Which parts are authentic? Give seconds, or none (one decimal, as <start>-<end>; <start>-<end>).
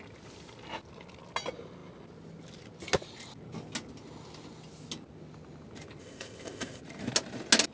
0.0-6.0; 6.8-7.7